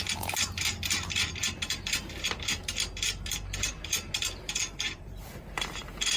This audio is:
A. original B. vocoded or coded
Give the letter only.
B